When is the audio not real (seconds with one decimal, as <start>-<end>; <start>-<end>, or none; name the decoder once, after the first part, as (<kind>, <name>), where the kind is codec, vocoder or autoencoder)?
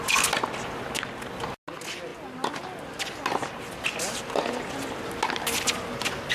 none